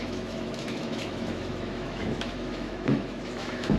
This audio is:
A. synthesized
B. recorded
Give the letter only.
A